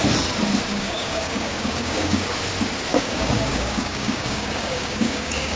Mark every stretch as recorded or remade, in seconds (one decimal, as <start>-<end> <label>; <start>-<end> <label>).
0.0-0.7 recorded; 0.7-2.3 remade; 2.3-2.9 recorded; 2.9-5.6 remade